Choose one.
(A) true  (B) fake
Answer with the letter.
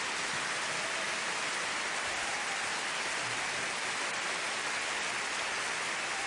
A